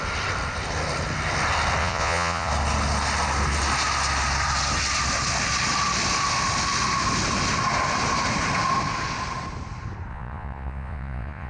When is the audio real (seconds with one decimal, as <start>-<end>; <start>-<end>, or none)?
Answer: 0.0-1.8; 2.5-10.1